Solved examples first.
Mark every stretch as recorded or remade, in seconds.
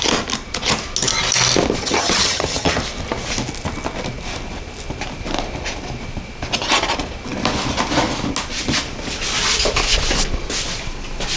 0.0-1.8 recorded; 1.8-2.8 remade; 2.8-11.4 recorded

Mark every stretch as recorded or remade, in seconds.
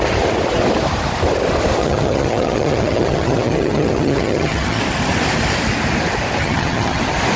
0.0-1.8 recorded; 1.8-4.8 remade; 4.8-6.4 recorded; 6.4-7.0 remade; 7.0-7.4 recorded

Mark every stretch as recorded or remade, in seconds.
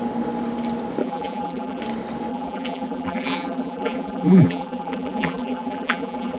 0.0-1.0 recorded; 1.0-1.8 remade; 1.8-2.3 recorded; 2.3-6.4 remade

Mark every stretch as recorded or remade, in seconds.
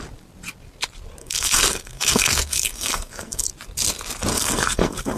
0.0-1.2 recorded; 1.2-3.5 remade; 3.5-4.3 recorded; 4.3-5.2 remade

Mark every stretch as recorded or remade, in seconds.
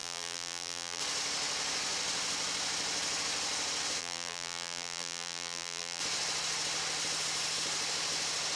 0.0-1.0 remade; 1.0-4.0 recorded; 4.0-6.0 remade; 6.0-8.6 recorded